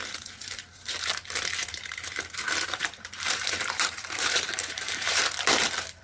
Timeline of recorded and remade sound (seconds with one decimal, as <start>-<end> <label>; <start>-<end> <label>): 0.0-0.4 recorded; 0.4-1.1 remade; 1.1-1.6 recorded; 1.6-5.2 remade; 5.2-6.0 recorded